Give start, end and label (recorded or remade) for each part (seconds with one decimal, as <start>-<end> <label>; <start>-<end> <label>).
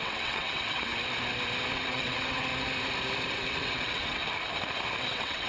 0.0-0.9 remade; 0.9-1.7 recorded; 1.7-2.5 remade; 2.5-3.3 recorded; 3.3-4.2 remade; 4.2-5.0 recorded; 5.0-5.5 remade